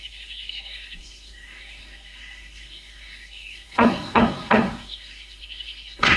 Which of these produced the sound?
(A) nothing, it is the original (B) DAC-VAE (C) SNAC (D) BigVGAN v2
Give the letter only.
C